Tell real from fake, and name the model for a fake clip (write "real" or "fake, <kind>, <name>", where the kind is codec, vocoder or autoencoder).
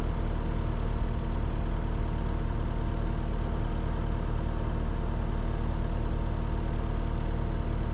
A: real